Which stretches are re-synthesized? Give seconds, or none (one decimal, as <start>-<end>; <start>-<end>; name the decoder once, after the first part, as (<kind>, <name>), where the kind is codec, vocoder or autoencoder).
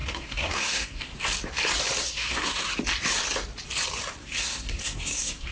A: 0.0-1.1 (codec, SNAC); 2.0-2.7; 4.2-5.5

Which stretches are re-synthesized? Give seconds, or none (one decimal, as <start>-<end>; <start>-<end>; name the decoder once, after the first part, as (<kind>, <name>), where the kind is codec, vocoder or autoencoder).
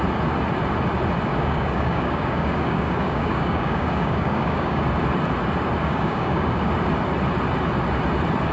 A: 1.3-4.8 (codec, DAC); 5.8-6.7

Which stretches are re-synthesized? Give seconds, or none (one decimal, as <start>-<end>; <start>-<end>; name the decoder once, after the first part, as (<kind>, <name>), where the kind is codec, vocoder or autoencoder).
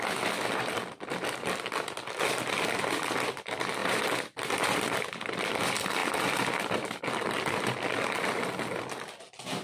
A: none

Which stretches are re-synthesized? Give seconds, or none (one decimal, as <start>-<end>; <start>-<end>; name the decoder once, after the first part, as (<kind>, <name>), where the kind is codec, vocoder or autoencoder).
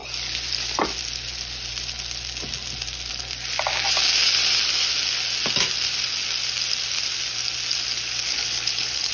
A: 8.3-9.1 (codec, HILCodec)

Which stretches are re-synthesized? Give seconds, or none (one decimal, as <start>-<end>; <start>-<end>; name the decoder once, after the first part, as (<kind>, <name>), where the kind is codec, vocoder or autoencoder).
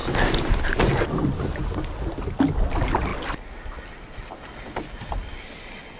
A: 0.0-0.8 (vocoder, BigVGAN v2)